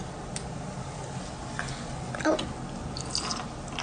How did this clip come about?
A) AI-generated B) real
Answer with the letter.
B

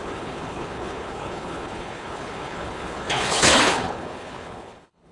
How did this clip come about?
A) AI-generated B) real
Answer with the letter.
A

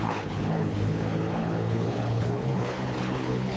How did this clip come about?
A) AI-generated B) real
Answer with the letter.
A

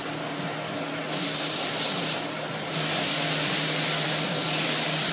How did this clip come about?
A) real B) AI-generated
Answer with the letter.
A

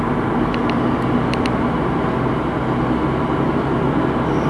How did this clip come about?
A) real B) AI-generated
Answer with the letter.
A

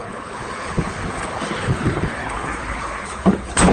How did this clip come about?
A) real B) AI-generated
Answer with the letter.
B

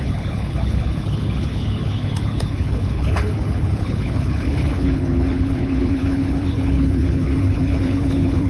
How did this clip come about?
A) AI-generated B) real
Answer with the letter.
A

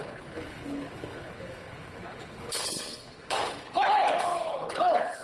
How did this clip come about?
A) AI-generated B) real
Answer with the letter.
A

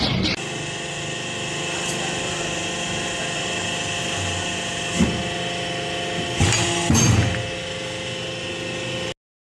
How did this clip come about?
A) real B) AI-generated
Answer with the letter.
A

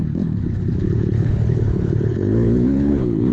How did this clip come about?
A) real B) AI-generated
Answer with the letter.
B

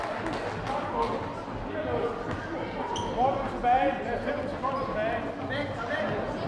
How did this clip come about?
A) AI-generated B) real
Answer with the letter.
B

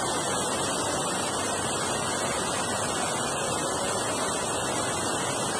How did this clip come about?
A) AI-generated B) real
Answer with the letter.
B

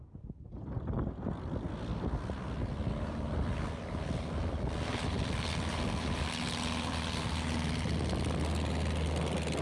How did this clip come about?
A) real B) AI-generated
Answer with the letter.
A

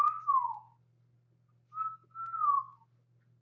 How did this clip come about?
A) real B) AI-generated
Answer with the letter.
A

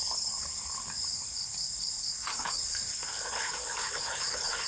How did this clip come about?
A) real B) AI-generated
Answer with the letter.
B